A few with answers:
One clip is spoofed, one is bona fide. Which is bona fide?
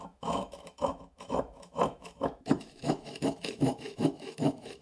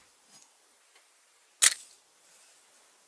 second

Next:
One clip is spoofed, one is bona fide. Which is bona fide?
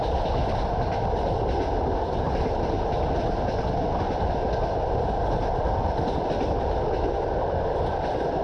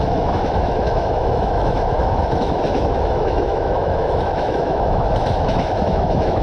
first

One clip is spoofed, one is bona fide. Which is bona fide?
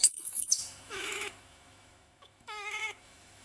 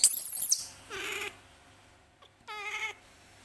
second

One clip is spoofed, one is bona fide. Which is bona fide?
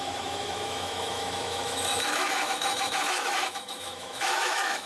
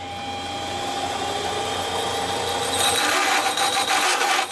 second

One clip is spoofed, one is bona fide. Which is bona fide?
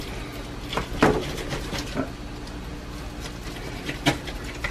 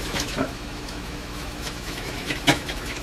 first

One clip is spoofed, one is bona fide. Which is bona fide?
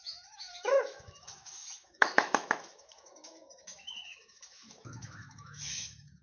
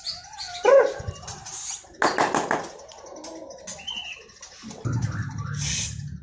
second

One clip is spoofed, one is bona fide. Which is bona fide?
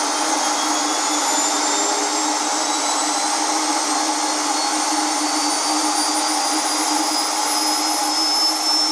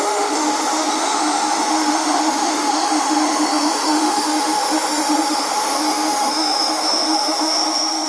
first